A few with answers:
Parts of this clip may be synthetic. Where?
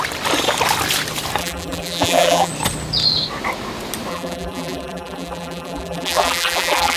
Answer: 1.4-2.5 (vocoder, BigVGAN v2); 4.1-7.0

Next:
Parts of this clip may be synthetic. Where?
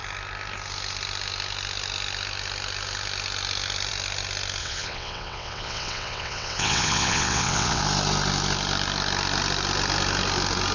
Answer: 4.6-7.8 (vocoder, WaveNeXt)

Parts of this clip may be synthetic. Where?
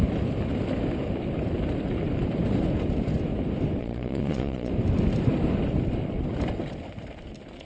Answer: 3.8-4.7 (vocoder, Vocos)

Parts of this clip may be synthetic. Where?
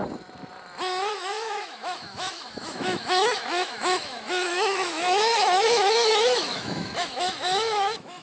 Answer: 1.1-8.2 (autoencoder, DAC-VAE)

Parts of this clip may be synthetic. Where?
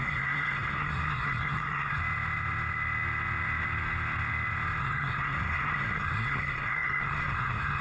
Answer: 0.0-2.0 (codec, SNAC); 4.8-7.8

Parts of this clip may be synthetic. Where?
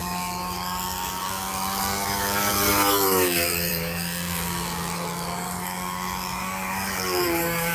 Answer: 0.0-7.7 (codec, DAC)